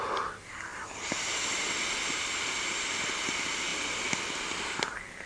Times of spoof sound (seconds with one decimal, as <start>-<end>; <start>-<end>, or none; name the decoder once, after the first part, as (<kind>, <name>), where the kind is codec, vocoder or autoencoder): none